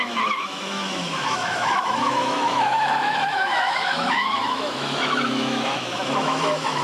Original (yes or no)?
no